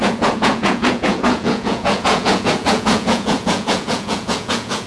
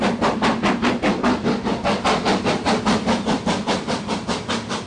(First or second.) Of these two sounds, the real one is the second